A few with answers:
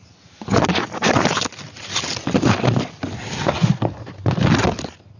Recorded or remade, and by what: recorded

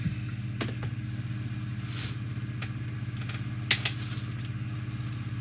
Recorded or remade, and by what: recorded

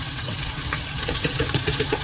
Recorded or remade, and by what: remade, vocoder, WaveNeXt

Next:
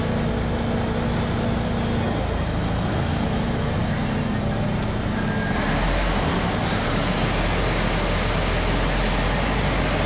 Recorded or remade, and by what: recorded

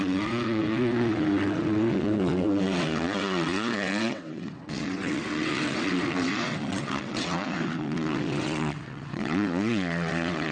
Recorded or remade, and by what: remade, vocoder, WaveNeXt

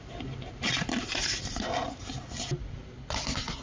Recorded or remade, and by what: recorded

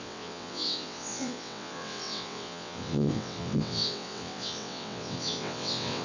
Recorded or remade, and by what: remade, vocoder, WaveNeXt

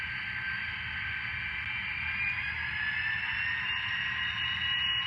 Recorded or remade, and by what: recorded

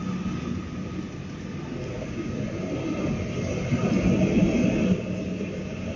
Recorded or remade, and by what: recorded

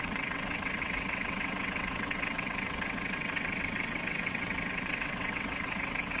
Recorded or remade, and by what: remade, vocoder, WaveNeXt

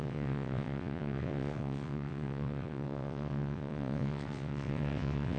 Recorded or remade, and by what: remade, vocoder, WaveNeXt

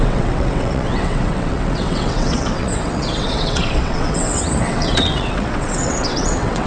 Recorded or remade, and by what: remade, vocoder, WaveNeXt